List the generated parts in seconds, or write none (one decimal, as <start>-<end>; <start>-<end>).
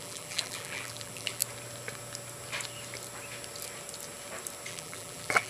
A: 0.0-1.4; 4.7-5.5